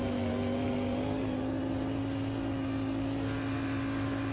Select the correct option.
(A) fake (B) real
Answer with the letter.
B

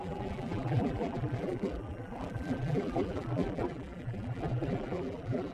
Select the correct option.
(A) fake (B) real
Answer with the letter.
A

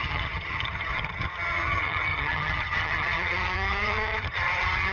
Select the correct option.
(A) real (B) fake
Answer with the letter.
B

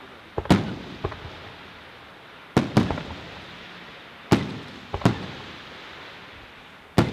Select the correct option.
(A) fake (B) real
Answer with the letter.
B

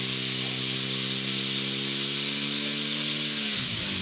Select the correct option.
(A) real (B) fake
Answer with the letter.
A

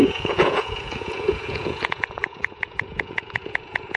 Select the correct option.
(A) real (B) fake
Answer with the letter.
B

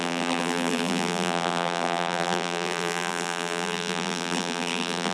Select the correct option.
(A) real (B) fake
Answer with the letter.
B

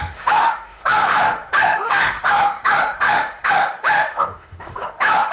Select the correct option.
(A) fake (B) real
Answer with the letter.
A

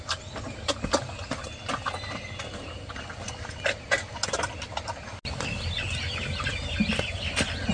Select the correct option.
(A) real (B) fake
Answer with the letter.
A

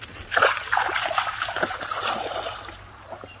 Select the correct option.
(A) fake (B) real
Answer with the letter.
A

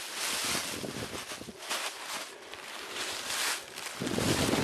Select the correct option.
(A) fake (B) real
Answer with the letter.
B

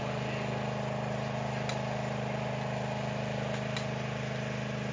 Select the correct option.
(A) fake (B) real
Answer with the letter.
B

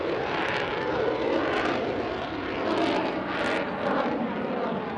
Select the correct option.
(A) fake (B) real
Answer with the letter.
B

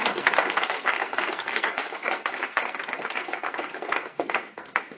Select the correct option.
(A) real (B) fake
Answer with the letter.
B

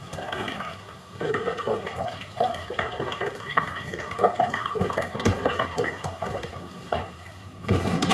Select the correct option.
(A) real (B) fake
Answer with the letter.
B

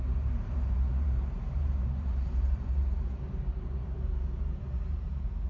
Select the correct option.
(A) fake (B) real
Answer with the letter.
A